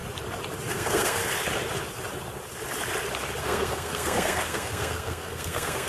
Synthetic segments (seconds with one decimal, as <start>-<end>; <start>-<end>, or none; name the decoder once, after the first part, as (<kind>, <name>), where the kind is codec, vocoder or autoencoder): 0.7-1.2 (codec, SNAC); 3.4-5.9